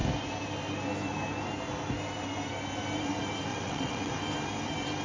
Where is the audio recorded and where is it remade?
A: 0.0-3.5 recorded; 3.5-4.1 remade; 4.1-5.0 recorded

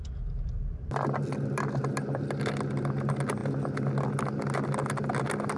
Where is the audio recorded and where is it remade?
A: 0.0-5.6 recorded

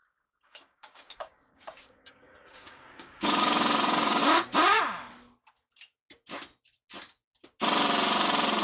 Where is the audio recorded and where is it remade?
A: 0.0-4.2 remade; 4.2-8.6 recorded